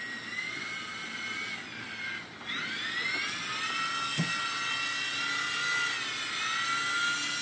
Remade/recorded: recorded